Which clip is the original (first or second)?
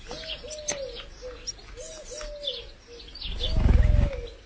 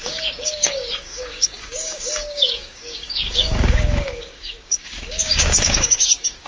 first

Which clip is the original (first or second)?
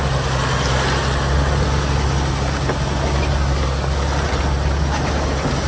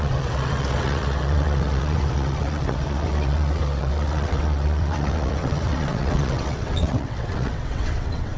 first